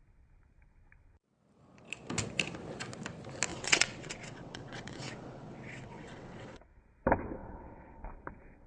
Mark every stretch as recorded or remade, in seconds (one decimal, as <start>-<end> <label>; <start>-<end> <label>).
0.0-3.5 recorded; 3.5-6.8 remade; 6.8-7.4 recorded; 7.4-8.0 remade; 8.0-8.7 recorded

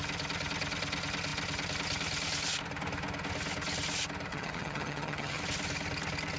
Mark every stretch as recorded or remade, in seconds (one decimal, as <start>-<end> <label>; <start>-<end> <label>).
0.0-4.3 recorded; 4.3-5.4 remade; 5.4-6.4 recorded

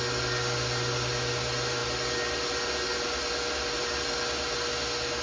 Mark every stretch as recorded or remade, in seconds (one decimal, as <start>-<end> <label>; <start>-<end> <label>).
0.0-5.2 recorded

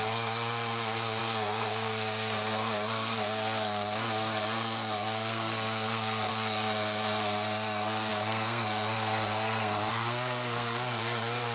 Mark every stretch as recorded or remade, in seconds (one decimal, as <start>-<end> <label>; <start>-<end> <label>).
0.0-11.5 remade

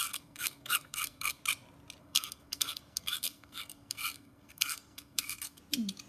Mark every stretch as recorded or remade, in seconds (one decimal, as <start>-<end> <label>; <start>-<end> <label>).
0.0-1.4 remade; 1.4-2.0 recorded; 2.0-5.6 remade; 5.6-6.1 recorded

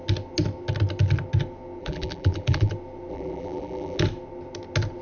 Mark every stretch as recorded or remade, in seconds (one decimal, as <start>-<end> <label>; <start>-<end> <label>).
0.0-1.8 recorded; 1.8-2.7 remade; 2.7-3.1 recorded; 3.1-4.0 remade; 4.0-5.0 recorded

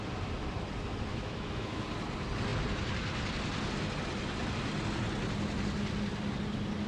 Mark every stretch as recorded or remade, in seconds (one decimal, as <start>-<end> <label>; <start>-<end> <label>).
0.0-1.1 recorded; 1.1-1.8 remade; 1.8-6.9 recorded